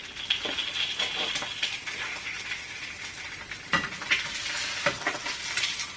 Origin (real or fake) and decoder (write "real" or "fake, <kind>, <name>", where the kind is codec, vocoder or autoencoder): real